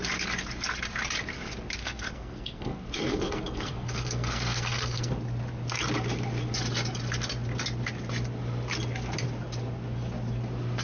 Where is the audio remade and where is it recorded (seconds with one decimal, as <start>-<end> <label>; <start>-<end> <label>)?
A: 0.0-1.8 recorded; 1.8-5.1 remade; 5.1-10.8 recorded